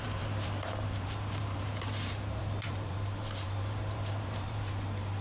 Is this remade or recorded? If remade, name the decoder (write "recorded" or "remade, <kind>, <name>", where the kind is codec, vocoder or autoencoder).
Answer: remade, vocoder, BigVGAN v2